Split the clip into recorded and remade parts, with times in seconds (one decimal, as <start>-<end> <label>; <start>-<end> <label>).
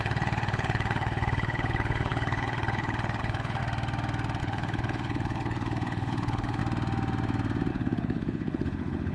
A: 0.0-3.6 remade; 3.6-4.4 recorded; 4.4-6.6 remade; 6.6-7.7 recorded; 7.7-9.1 remade